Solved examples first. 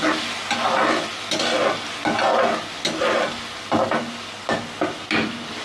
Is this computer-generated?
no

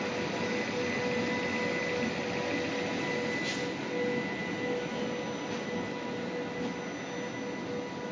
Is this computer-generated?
no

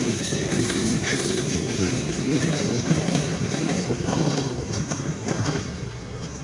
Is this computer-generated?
yes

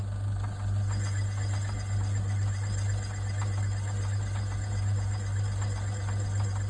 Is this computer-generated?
no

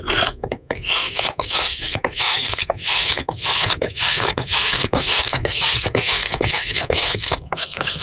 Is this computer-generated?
yes